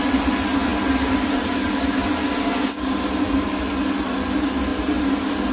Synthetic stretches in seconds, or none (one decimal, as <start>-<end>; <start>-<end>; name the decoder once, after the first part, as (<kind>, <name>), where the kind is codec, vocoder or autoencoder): none